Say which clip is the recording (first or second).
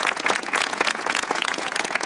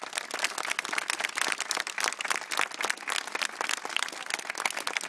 second